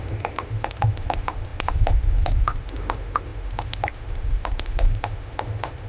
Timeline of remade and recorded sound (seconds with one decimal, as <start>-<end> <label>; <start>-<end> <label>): 0.0-5.9 remade